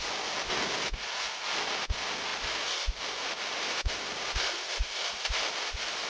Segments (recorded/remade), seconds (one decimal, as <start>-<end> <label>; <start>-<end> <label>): 0.0-6.1 recorded